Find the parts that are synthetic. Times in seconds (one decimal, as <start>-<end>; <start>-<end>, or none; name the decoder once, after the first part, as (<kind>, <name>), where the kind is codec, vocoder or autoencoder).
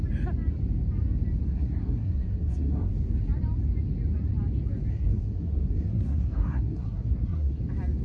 1.5-2.9 (codec, SNAC); 4.9-7.6